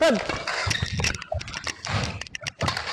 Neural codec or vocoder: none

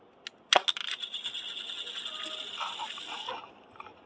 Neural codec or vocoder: none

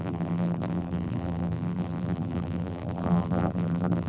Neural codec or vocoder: vocoder, BigVGAN v2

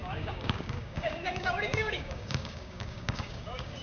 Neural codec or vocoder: codec, DAC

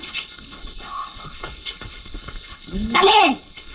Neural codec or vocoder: codec, HILCodec